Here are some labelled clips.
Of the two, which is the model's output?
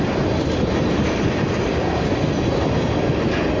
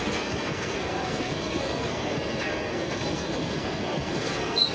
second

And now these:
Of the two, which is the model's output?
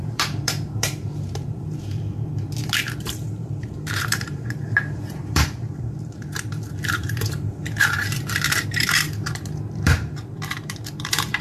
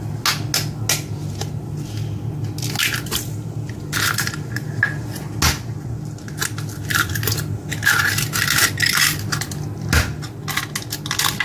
first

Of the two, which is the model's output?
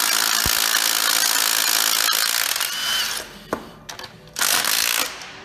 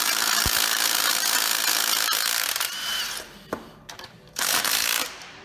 second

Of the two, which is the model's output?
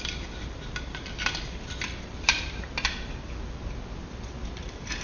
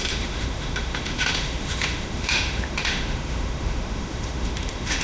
second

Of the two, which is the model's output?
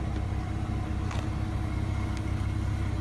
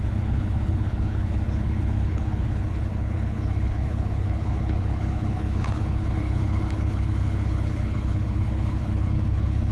second